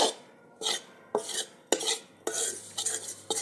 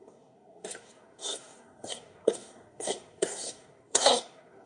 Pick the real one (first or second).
first